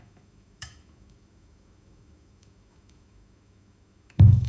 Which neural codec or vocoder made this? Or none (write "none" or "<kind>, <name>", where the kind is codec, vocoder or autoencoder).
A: autoencoder, DAC-VAE